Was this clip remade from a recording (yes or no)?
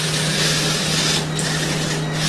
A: no